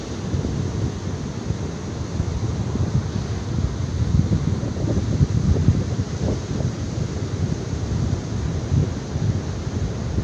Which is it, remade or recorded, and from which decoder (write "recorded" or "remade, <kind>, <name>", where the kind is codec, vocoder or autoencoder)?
recorded